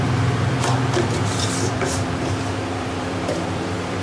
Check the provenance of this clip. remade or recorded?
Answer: remade